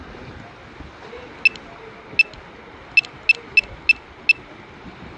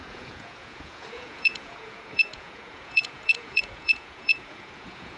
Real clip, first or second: first